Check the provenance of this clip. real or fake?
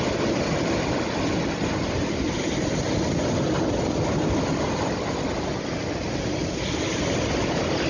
real